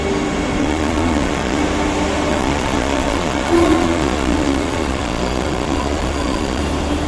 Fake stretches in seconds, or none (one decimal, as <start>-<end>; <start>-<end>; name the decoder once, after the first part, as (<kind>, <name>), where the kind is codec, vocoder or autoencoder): 0.6-1.6 (vocoder, Vocos); 2.3-6.6